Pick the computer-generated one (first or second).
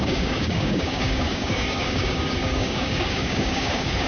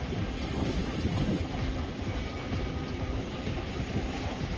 first